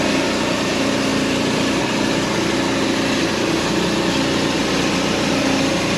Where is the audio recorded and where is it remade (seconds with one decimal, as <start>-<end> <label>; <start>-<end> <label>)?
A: 0.0-6.0 recorded